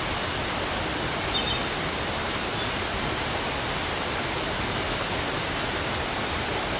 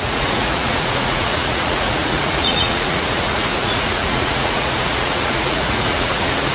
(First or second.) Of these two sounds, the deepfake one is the second